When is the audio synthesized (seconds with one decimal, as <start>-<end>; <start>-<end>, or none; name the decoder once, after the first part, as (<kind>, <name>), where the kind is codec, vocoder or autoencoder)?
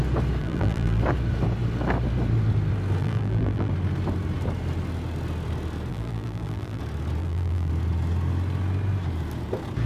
0.4-1.0 (vocoder, BigVGAN v2); 3.0-3.7; 5.9-6.8; 7.2-7.7